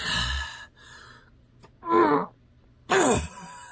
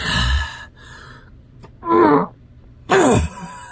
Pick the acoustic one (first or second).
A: first